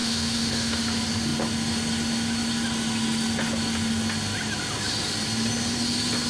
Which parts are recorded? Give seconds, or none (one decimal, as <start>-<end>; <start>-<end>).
0.8-6.3